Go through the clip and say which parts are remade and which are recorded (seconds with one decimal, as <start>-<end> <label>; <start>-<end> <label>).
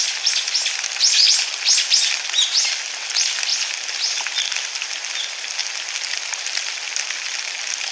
0.0-7.9 recorded